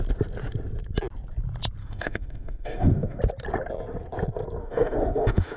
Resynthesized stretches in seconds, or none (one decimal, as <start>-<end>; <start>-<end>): 1.8-3.2; 4.6-5.6